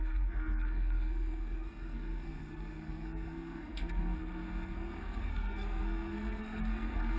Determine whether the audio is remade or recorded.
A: remade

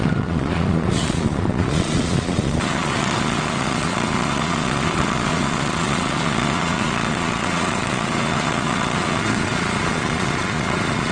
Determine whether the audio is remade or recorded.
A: remade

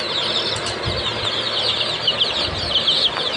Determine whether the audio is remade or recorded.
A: recorded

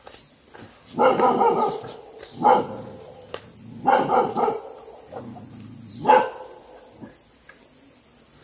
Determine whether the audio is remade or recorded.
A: recorded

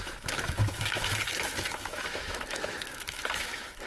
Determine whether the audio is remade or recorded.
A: remade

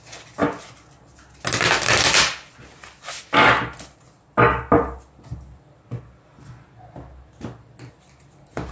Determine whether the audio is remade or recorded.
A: recorded